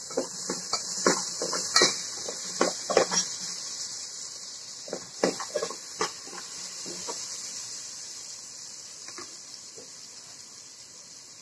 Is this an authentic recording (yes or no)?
yes